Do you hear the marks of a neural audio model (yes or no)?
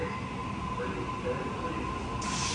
no